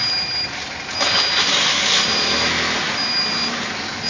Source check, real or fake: real